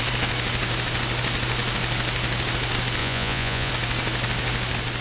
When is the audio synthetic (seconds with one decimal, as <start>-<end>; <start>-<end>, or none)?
3.0-3.7